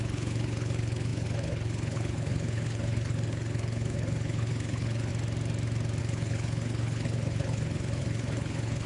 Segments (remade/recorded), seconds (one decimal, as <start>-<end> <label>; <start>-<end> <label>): 0.0-5.1 remade; 5.1-6.0 recorded; 6.0-8.9 remade